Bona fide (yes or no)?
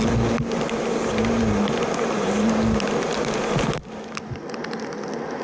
yes